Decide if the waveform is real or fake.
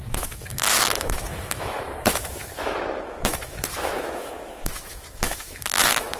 fake